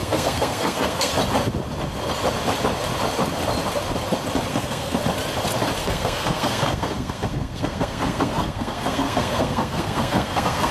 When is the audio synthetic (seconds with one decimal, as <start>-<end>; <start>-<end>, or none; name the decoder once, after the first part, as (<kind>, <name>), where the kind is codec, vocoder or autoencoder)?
0.0-1.1 (codec, SNAC); 4.5-5.0; 5.8-10.7